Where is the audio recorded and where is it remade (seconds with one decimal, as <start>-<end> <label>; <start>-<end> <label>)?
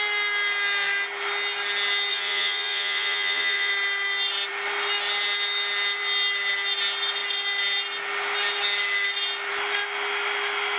0.0-2.1 recorded; 2.1-3.7 remade; 3.7-10.8 recorded